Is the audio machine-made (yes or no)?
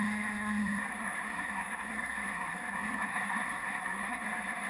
yes